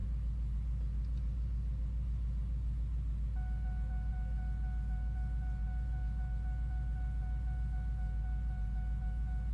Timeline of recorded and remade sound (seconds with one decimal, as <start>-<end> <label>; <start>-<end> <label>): 0.0-9.5 recorded